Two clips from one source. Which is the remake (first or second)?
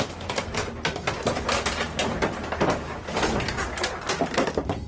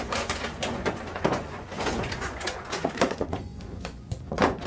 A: second